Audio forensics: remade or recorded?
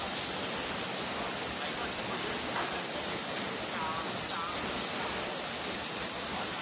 recorded